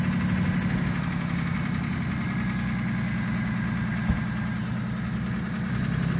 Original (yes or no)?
yes